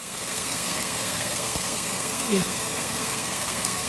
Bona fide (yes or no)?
no